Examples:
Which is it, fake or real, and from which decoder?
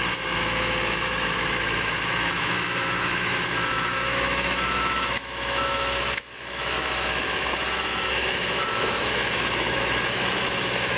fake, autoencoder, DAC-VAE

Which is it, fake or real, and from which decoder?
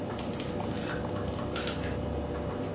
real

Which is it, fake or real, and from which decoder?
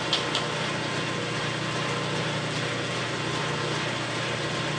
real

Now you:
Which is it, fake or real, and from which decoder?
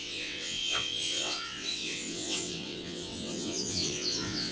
fake, vocoder, WaveNeXt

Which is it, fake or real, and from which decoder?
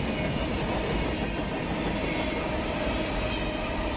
real